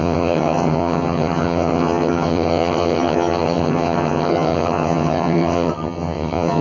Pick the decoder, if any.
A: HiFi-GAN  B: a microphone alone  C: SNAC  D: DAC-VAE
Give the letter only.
A